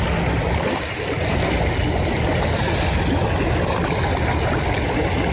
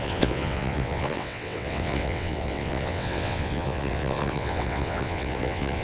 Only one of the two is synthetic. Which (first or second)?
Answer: second